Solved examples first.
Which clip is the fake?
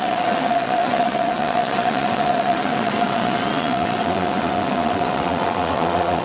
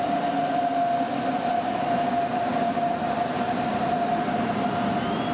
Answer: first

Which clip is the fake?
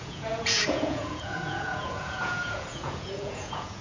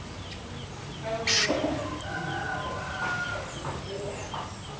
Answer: first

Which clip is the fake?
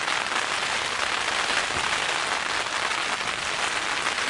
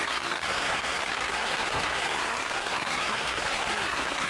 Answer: second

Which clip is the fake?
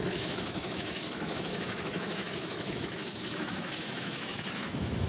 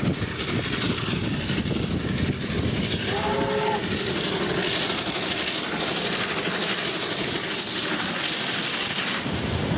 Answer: first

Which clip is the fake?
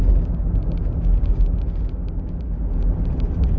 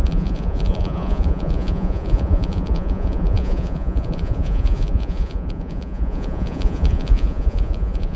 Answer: second